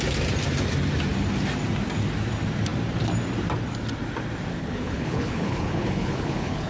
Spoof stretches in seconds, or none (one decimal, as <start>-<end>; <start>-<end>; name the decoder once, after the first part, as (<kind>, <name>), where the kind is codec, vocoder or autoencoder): 4.5-6.7 (codec, HILCodec)